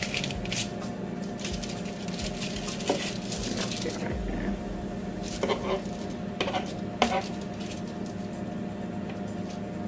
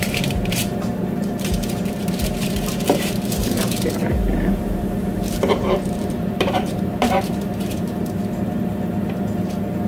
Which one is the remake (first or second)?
second